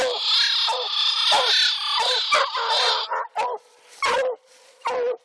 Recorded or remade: recorded